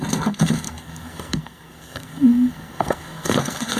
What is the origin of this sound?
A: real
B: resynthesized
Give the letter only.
B